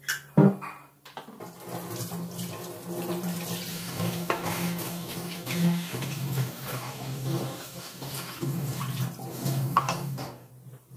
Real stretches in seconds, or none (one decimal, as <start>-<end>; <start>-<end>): 0.0-3.7; 8.8-9.3; 10.5-11.0